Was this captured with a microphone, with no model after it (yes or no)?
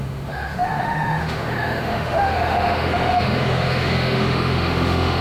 no